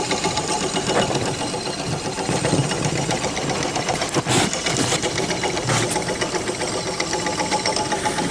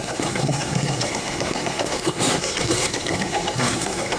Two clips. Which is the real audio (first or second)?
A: first